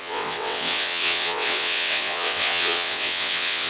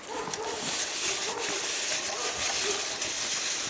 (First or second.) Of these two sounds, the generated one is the first